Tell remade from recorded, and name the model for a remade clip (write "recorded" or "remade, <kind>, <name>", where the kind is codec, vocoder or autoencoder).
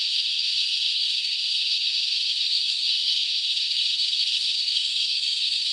remade, codec, SNAC